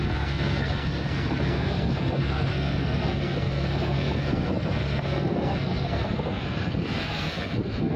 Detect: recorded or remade remade